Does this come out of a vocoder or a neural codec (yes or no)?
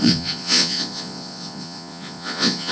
yes